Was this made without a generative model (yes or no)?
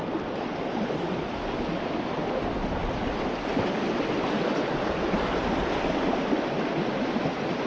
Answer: yes